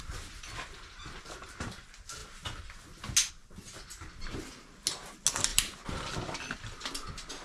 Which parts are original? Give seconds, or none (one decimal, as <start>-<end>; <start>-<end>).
0.0-7.4